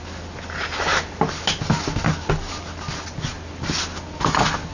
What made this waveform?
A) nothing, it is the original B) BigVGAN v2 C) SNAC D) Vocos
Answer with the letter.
A